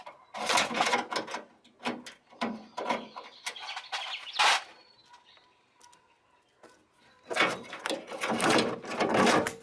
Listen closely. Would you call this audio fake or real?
real